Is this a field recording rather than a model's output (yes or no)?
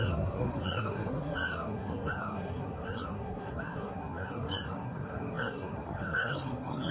no